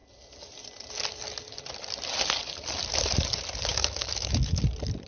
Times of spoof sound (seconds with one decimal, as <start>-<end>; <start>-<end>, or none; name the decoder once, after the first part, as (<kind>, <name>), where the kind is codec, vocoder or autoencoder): 3.7-4.6 (autoencoder, DAC-VAE)